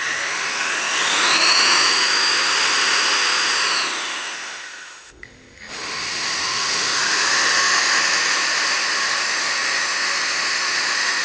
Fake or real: fake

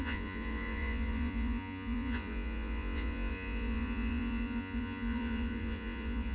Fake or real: fake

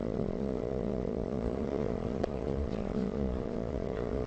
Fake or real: fake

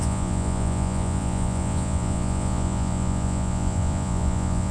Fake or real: fake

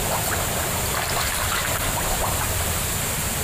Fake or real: fake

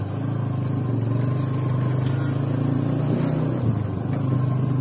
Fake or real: real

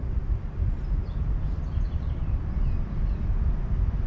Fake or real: real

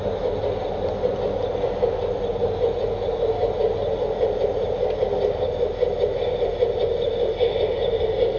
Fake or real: real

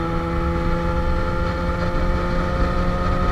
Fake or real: real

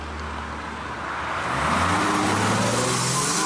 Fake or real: real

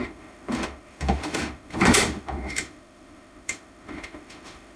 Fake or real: fake